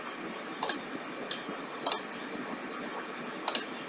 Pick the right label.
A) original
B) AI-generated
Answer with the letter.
A